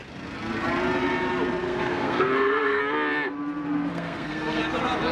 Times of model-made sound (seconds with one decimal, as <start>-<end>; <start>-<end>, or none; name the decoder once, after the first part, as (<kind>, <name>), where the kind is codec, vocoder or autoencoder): 1.7-2.8 (codec, SNAC); 3.9-4.6